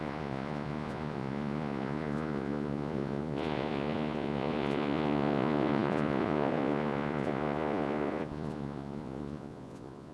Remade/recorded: remade